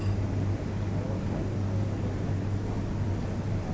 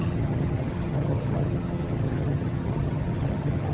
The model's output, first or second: second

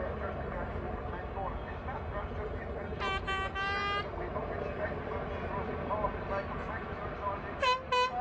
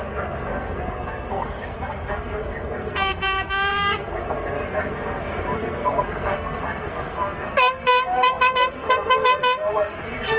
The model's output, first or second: second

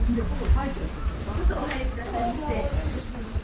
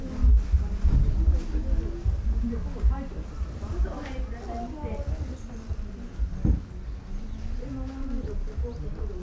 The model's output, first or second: first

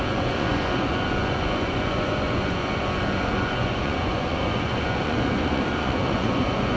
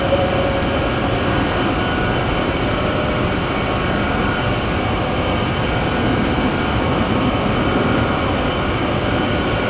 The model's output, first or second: first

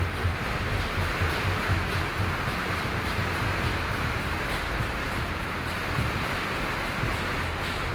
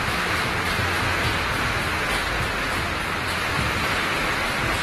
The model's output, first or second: first